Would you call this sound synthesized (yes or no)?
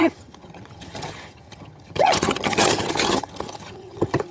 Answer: yes